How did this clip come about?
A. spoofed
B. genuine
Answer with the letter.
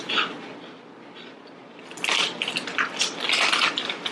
B